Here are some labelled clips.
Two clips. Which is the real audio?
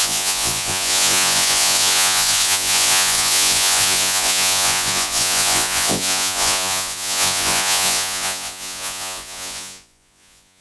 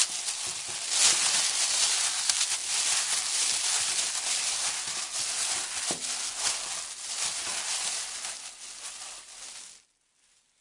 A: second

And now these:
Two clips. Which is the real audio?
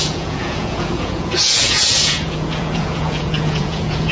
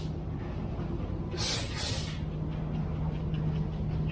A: second